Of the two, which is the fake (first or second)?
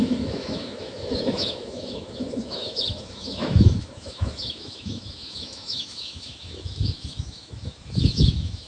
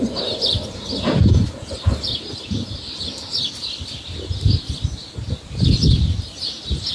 first